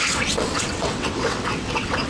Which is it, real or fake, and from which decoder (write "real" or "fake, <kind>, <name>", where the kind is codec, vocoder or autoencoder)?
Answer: fake, vocoder, WaveNeXt